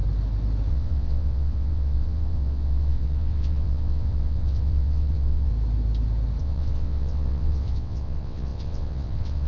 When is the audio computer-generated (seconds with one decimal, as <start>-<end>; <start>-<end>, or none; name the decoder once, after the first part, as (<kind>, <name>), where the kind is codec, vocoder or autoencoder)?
0.7-5.5 (vocoder, WaveNeXt); 6.4-9.5

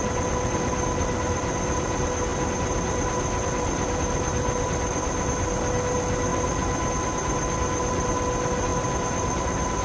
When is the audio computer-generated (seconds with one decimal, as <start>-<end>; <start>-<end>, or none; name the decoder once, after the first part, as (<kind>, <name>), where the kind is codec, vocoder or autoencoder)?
none

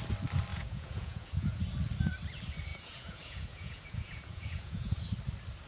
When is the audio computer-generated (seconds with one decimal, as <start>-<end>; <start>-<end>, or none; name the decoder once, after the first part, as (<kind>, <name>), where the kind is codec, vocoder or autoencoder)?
0.5-1.6 (vocoder, Vocos); 2.7-5.0

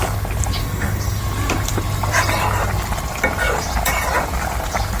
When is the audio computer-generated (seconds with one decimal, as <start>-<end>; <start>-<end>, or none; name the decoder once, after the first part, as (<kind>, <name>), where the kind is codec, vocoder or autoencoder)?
0.6-1.2 (codec, SNAC)

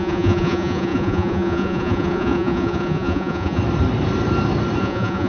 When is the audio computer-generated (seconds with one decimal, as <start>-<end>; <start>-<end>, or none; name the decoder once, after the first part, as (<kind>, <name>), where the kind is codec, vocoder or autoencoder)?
0.0-3.6 (vocoder, Vocos); 4.8-5.3